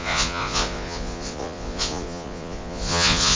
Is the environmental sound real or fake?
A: fake